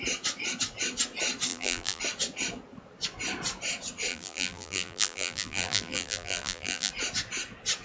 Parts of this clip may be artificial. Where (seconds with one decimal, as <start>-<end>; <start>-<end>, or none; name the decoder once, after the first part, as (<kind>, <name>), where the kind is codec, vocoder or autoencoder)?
1.5-2.0 (vocoder, BigVGAN v2); 4.1-6.9